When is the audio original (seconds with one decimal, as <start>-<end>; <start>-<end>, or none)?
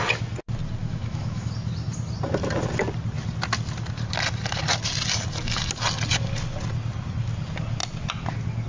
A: 0.0-0.8; 1.5-8.7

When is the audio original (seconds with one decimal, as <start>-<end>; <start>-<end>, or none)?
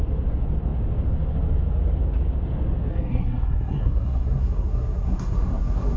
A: 0.0-2.9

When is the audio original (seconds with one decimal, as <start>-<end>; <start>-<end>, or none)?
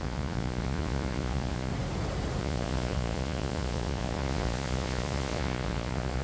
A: 1.7-2.4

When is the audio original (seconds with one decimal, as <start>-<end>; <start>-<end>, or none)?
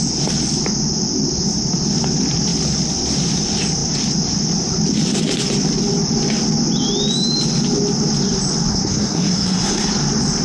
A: 0.0-8.7; 9.9-10.4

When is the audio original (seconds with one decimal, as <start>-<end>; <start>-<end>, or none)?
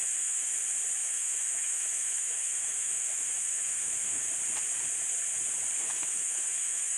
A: 0.6-1.0; 4.3-5.8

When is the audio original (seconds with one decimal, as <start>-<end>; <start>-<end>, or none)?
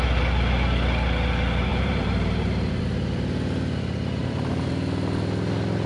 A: 0.0-1.7; 2.8-4.2; 4.7-5.9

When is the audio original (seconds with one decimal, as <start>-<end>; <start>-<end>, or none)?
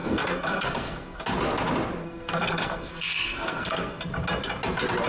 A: 1.2-2.0; 4.0-5.1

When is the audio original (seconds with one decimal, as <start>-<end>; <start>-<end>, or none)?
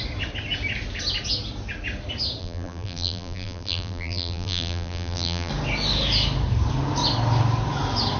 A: 0.0-2.4; 5.5-8.2